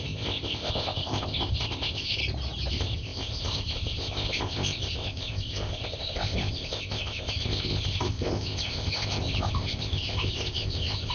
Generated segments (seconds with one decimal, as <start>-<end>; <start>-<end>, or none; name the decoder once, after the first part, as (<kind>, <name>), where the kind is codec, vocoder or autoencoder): 0.0-2.2 (codec, ZipCodec); 2.7-11.1